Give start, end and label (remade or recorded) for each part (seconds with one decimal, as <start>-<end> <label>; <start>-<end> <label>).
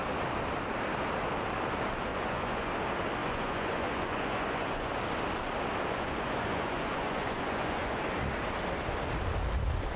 0.0-2.1 recorded; 2.1-2.7 remade; 2.7-3.2 recorded; 3.2-4.9 remade; 4.9-5.9 recorded; 5.9-8.0 remade; 8.0-10.0 recorded